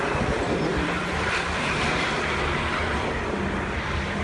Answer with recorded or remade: remade